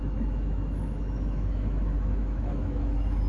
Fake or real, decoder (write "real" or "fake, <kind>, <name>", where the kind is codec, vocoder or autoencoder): fake, autoencoder, DAC-VAE